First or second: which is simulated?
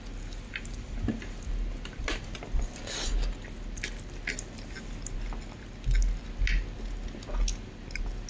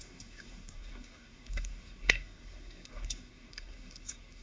second